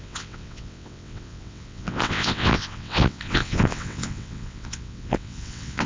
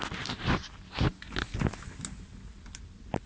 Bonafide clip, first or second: second